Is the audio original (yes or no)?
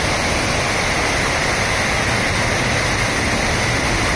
yes